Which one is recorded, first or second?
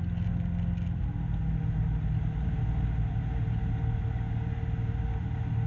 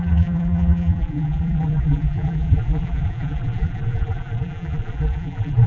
first